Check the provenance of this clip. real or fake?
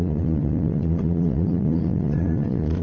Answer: fake